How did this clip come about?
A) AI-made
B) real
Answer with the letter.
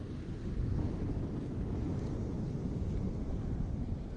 B